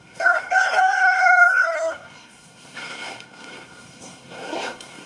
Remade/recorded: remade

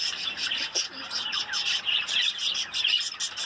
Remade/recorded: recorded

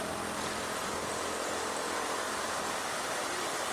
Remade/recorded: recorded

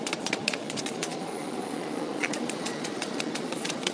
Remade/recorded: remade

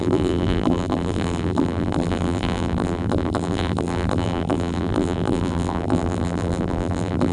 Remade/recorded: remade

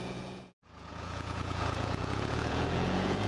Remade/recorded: remade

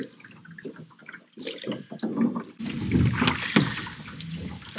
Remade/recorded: recorded